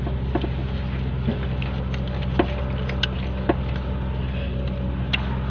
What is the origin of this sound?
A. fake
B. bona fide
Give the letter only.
B